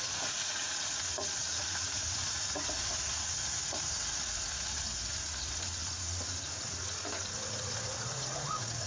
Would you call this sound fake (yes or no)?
yes